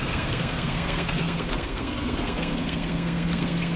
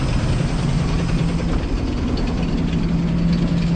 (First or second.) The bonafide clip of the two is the second